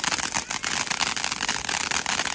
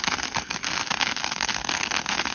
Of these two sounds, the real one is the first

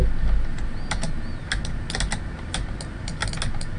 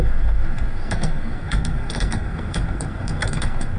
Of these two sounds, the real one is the first